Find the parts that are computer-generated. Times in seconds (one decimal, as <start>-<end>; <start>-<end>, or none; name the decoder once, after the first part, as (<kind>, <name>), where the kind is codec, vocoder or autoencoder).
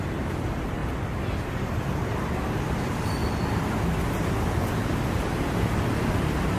0.0-0.8 (vocoder, BigVGAN v2); 1.8-3.2